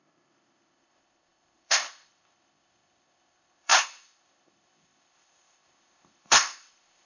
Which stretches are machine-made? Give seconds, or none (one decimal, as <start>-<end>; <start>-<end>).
0.0-7.1